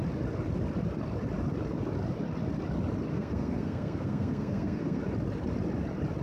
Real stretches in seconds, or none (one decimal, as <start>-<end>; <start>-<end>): 0.0-3.1; 5.0-6.2